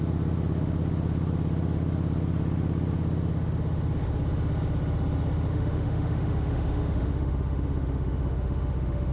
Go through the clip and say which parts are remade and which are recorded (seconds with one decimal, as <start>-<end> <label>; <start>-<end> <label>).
0.0-5.5 recorded; 5.5-9.1 remade